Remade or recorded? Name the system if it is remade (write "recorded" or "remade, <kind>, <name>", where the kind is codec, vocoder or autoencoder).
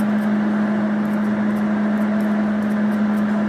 recorded